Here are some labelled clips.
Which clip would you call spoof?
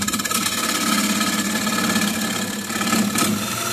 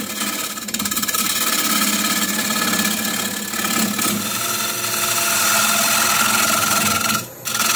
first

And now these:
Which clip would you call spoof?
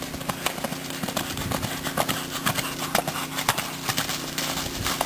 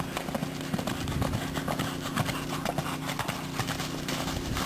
second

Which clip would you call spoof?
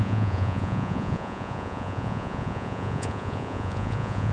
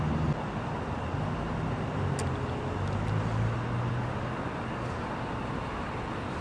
first